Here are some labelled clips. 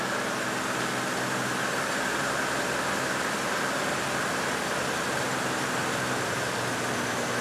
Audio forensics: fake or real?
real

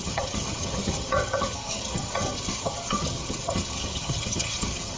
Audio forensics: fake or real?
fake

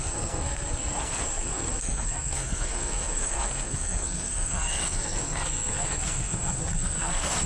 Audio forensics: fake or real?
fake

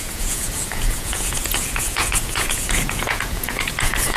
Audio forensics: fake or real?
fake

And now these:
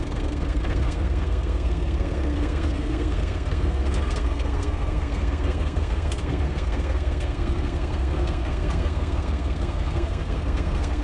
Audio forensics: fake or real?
fake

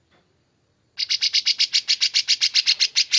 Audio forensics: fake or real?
real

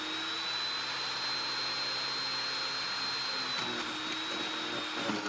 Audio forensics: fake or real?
real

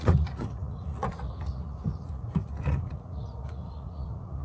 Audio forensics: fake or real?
fake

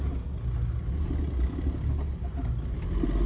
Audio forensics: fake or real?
real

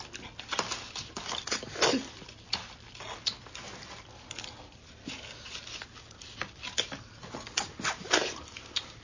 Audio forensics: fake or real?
real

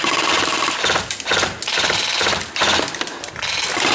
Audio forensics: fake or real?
real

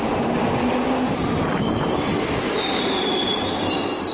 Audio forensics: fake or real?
real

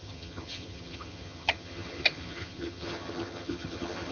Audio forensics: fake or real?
fake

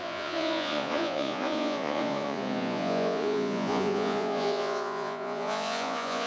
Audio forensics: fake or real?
fake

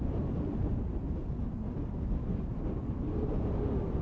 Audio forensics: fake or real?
real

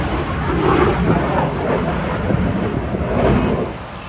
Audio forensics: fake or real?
real